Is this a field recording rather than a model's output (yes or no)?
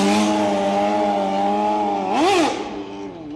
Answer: yes